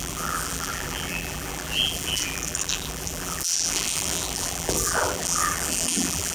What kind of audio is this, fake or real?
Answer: fake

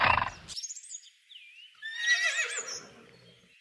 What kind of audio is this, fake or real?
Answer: real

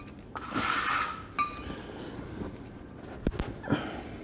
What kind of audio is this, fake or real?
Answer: fake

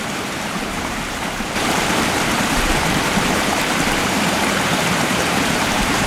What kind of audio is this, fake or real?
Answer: fake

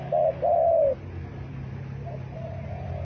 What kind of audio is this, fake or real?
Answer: real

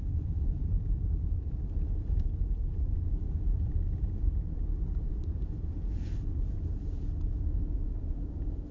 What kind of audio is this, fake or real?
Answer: fake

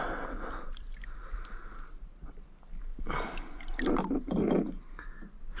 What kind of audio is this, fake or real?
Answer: real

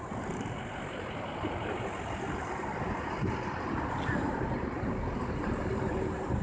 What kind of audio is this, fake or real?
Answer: real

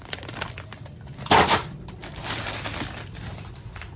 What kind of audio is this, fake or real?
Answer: fake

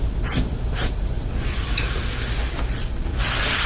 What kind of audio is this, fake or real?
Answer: fake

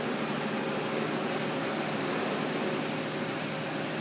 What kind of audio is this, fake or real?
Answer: real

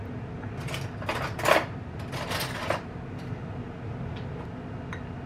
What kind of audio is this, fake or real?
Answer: real